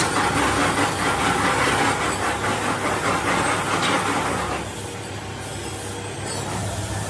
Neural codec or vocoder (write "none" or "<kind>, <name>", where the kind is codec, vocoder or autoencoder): none